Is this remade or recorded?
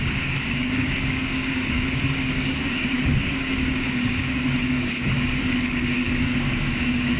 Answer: remade